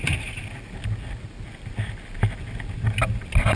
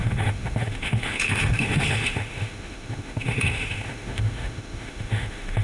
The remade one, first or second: second